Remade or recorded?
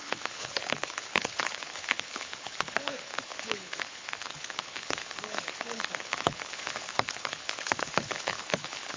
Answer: remade